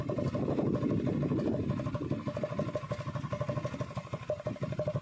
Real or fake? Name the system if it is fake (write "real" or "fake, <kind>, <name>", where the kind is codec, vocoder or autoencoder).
real